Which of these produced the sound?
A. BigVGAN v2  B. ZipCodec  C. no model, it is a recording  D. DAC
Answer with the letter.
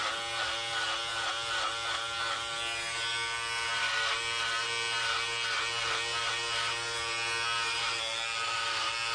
C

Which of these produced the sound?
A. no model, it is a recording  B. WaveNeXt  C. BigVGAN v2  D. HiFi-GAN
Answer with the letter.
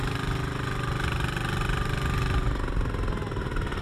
A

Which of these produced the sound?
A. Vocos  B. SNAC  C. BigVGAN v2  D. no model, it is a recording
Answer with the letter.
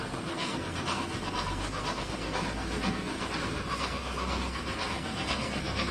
B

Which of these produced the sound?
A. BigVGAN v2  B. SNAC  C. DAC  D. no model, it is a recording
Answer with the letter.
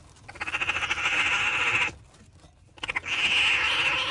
D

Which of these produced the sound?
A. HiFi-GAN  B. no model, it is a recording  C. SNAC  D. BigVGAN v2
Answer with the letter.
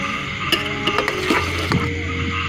B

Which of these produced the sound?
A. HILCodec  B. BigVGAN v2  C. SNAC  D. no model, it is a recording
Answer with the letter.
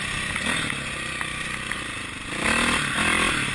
D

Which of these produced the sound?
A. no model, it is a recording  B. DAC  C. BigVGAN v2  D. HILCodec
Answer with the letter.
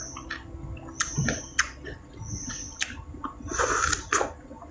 A